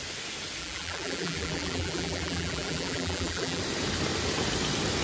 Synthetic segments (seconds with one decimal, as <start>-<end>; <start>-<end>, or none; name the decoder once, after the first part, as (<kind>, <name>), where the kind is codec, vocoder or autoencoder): 0.6-3.6 (vocoder, BigVGAN v2)